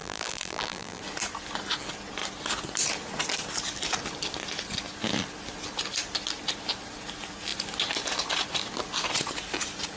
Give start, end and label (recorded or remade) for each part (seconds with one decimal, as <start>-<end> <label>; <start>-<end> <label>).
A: 0.0-1.0 remade; 1.0-10.0 recorded